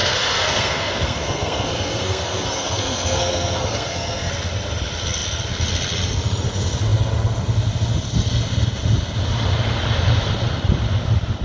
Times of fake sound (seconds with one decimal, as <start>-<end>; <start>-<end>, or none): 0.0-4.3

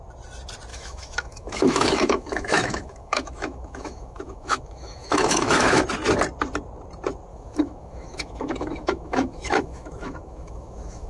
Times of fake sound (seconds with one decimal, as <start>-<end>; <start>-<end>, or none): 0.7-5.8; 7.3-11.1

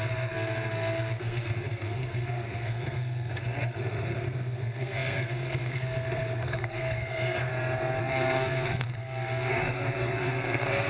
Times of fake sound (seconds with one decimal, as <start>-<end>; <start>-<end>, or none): 0.0-7.5; 8.0-10.9

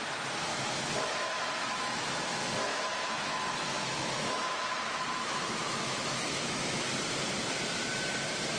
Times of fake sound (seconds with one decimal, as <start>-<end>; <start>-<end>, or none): 0.5-2.0; 2.7-6.8

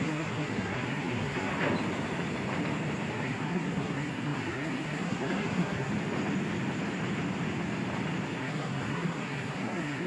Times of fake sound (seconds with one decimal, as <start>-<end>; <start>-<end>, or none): 0.0-1.5; 3.1-5.9; 8.4-10.1

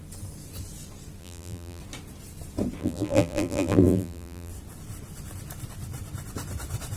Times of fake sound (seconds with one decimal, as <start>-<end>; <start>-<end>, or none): 1.2-1.8; 2.8-4.5

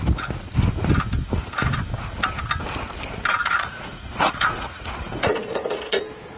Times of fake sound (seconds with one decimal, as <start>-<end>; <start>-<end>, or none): 3.4-6.0